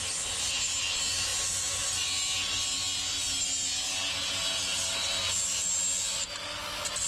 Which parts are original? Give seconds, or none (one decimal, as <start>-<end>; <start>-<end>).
0.0-7.1